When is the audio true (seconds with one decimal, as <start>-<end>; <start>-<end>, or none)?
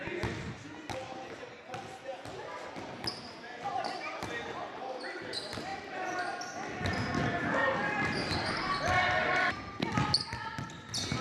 0.0-11.2